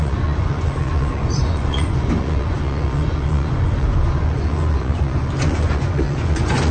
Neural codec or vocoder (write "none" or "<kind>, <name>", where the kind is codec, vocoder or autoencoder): vocoder, Vocos